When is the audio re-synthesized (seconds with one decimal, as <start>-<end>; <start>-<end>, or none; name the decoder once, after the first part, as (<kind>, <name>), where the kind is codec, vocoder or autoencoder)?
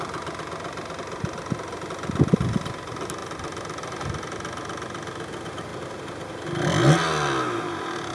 none